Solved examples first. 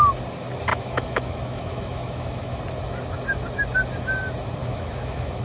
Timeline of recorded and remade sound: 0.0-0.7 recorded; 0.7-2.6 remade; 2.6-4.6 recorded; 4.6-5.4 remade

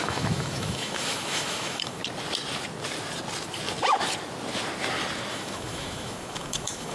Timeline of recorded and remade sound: 0.0-2.0 remade; 2.0-5.3 recorded; 5.3-6.9 remade